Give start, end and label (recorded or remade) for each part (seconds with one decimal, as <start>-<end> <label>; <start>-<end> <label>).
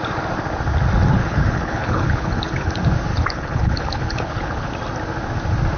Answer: 0.0-1.2 recorded; 1.2-2.7 remade; 2.7-3.1 recorded; 3.1-4.7 remade; 4.7-5.8 recorded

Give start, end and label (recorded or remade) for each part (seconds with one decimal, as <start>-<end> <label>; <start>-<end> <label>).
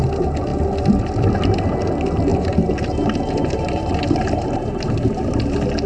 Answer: 0.0-2.3 recorded; 2.3-5.4 remade; 5.4-5.9 recorded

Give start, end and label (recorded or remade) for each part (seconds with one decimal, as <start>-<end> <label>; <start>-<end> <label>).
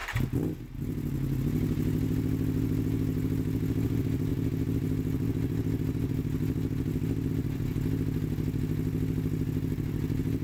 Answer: 0.0-10.4 recorded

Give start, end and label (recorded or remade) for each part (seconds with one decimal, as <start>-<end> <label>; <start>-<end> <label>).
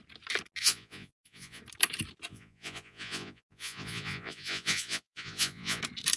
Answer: 0.0-0.6 recorded; 0.6-1.6 remade; 1.6-2.3 recorded; 2.3-5.8 remade; 5.8-6.2 recorded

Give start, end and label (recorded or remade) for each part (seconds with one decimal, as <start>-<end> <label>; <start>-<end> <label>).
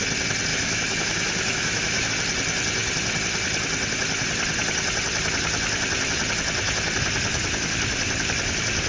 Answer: 0.0-0.5 recorded; 0.5-2.1 remade; 2.1-8.9 recorded